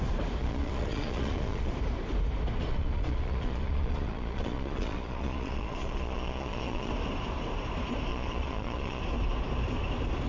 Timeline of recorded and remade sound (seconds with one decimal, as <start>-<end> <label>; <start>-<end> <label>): 0.0-0.4 recorded; 0.4-1.7 remade; 1.7-2.7 recorded; 2.7-6.9 remade; 6.9-8.1 recorded; 8.1-9.0 remade; 9.0-10.3 recorded